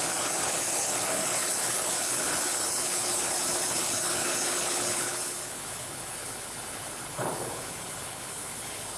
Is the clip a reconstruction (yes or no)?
yes